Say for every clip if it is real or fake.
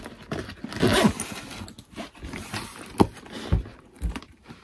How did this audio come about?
real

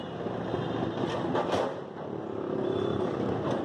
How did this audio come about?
real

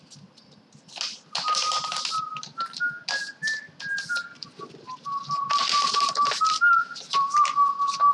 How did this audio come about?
real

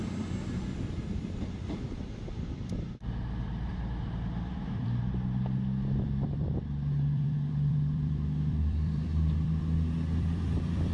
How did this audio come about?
fake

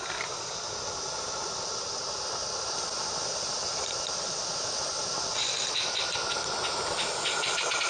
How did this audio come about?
real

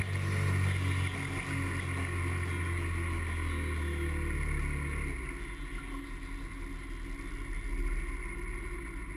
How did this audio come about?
real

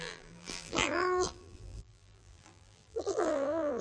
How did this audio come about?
fake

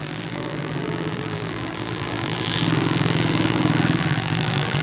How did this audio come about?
fake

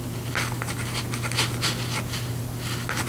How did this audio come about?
real